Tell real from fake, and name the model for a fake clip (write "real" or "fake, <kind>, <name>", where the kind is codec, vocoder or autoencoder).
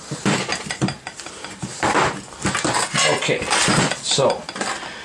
real